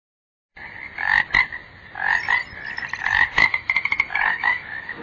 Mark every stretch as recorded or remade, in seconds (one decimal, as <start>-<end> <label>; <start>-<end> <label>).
0.0-3.0 recorded; 3.0-5.0 remade